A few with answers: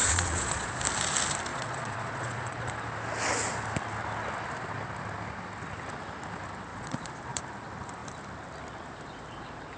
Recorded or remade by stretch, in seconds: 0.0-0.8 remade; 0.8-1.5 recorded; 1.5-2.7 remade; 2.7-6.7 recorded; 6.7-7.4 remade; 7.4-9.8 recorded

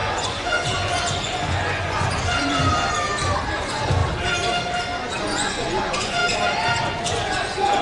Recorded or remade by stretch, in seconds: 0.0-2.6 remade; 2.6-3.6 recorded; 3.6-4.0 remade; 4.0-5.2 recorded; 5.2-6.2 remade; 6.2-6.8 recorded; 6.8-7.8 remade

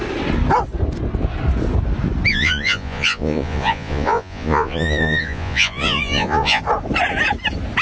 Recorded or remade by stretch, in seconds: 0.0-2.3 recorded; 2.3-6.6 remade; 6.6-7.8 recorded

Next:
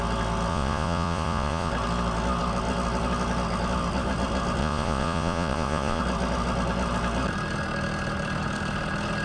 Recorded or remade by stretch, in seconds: 0.0-0.5 recorded; 0.5-1.7 remade; 1.7-4.6 recorded; 4.6-6.0 remade; 6.0-9.2 recorded